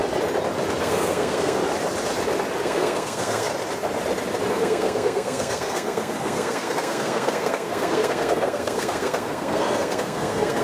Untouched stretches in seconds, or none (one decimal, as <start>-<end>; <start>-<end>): 0.0-0.8; 1.6-2.6; 3.5-4.5